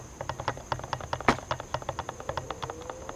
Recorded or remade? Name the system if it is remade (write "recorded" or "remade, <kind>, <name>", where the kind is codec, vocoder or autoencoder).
recorded